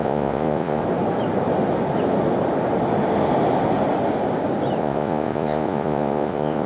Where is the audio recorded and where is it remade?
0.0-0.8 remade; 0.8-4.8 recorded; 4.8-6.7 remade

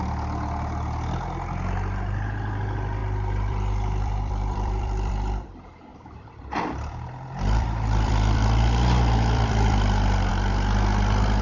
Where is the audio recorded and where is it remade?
0.0-3.0 recorded; 3.0-5.1 remade; 5.1-5.9 recorded; 5.9-10.3 remade; 10.3-11.4 recorded

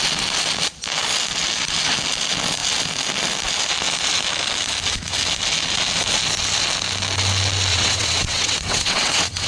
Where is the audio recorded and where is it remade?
0.0-7.7 recorded; 7.7-9.5 remade